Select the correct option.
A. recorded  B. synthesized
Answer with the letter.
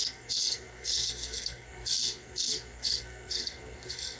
B